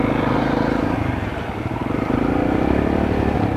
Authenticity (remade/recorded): recorded